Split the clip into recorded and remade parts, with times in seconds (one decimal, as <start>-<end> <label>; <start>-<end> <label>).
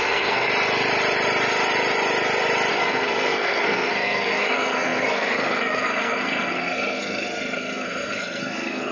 0.0-0.5 remade; 0.5-2.7 recorded; 2.7-8.9 remade